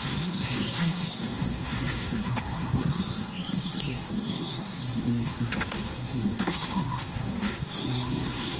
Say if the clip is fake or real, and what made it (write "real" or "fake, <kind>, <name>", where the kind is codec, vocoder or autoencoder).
fake, codec, SNAC